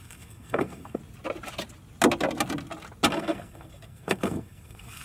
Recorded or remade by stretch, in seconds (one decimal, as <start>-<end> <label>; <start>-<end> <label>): 0.0-1.0 remade; 1.0-3.1 recorded; 3.1-5.0 remade